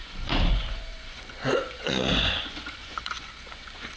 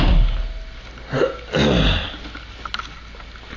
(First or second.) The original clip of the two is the second